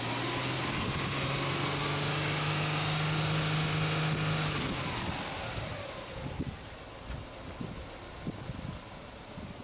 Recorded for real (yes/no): yes